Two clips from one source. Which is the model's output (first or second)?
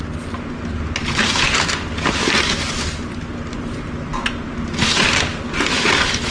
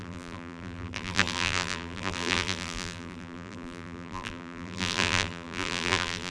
second